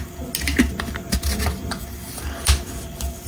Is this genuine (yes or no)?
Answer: yes